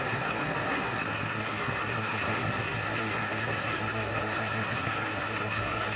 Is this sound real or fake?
fake